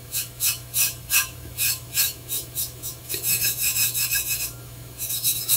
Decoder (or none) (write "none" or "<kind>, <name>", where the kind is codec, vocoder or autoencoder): autoencoder, DAC-VAE